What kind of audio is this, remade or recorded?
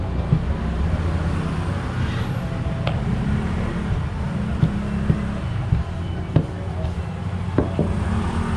recorded